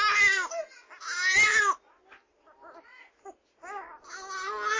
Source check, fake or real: real